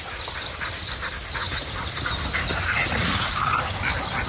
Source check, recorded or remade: recorded